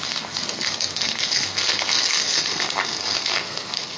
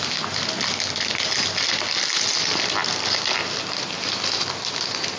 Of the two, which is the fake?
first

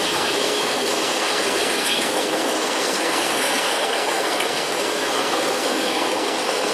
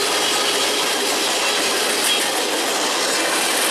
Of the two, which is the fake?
first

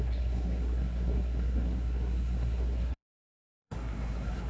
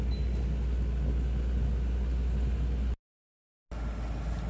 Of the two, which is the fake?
first